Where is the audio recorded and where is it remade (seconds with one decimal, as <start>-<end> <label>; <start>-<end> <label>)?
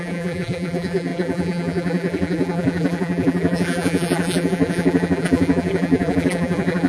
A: 0.0-6.9 remade